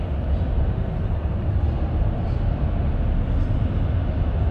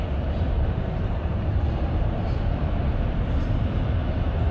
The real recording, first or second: first